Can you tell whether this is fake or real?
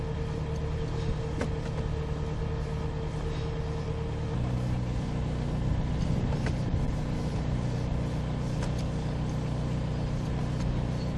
real